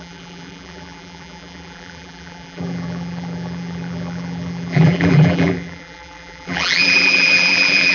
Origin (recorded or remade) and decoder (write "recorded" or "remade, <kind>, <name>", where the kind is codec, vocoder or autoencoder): remade, vocoder, BigVGAN v2